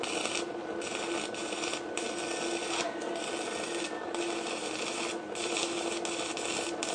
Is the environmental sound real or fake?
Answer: real